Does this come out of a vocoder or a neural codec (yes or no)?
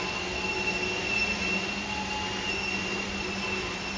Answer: no